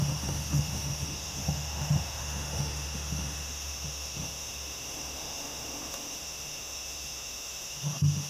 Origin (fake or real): fake